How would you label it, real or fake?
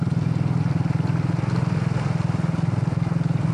real